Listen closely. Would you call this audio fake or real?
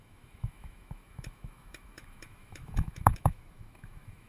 fake